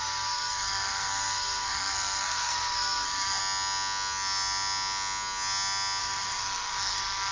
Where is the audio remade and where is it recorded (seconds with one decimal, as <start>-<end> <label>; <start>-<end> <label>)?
0.0-3.4 remade; 3.4-6.0 recorded; 6.0-7.3 remade